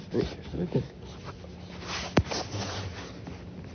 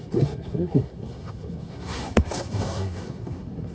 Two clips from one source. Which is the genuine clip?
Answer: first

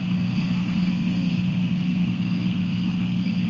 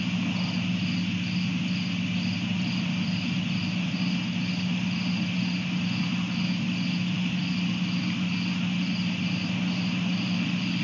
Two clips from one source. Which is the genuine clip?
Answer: second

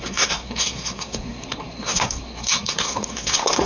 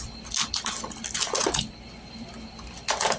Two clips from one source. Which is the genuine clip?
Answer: second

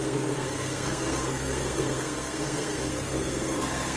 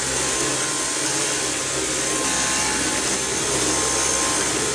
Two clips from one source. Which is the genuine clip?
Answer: second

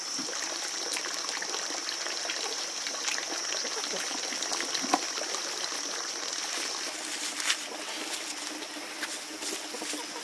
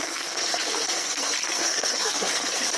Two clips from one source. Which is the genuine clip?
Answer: first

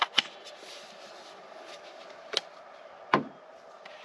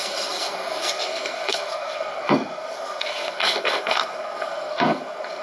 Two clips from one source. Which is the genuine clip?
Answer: first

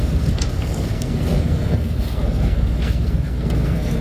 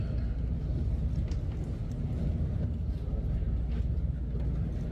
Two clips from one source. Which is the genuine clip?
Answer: second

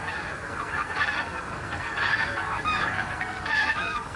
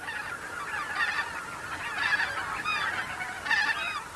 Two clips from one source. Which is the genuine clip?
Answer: second